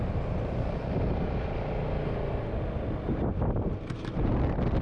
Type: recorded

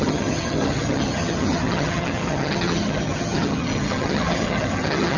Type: remade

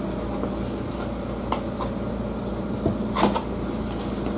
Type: recorded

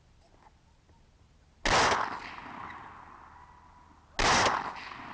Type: recorded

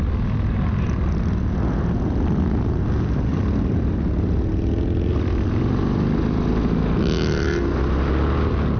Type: recorded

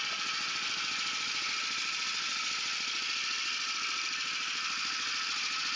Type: recorded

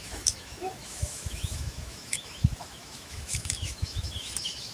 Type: remade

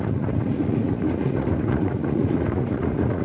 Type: remade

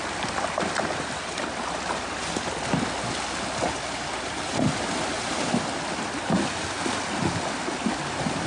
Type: recorded